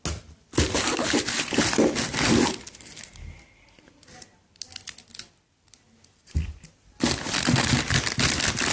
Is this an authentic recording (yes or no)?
yes